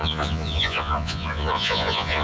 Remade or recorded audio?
remade